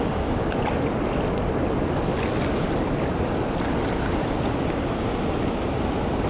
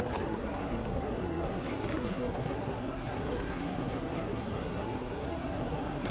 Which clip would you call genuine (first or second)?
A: first